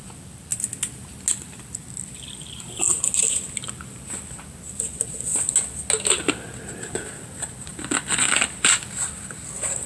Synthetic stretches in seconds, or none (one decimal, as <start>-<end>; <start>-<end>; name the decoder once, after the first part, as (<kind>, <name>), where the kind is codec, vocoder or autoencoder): none